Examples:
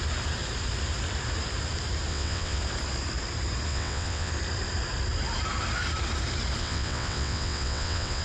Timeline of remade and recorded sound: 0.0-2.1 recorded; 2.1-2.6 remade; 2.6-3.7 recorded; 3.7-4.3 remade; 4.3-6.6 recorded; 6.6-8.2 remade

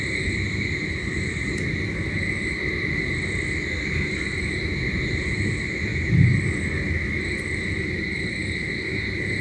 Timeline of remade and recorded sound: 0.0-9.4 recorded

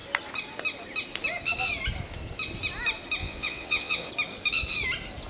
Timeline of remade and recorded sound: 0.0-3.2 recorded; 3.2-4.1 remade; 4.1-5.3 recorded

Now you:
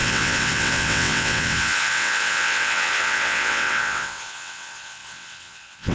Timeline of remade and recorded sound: 0.0-5.9 remade